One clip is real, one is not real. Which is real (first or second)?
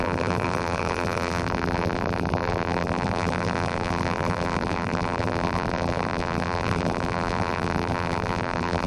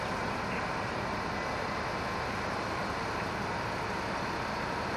second